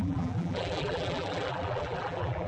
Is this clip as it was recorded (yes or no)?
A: no